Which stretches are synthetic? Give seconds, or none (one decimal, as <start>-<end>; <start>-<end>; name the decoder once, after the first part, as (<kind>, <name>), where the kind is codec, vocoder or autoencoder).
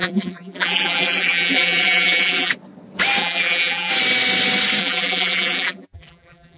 0.0-2.5 (vocoder, BigVGAN v2); 3.2-3.9; 4.8-6.6